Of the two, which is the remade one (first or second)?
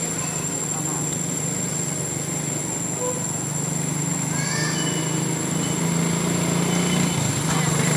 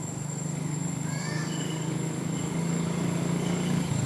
second